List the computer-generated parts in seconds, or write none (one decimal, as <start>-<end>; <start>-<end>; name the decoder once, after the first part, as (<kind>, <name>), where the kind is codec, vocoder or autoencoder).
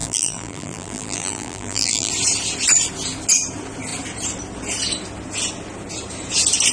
0.0-2.1 (vocoder, BigVGAN v2)